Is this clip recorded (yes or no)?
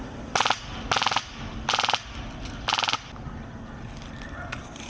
yes